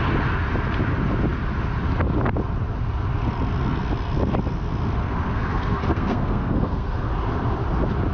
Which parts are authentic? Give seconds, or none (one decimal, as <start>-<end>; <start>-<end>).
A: 0.0-5.0; 7.1-8.1